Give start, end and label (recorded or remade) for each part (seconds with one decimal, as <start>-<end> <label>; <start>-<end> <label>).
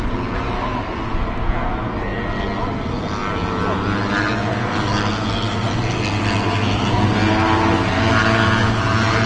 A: 0.0-9.3 recorded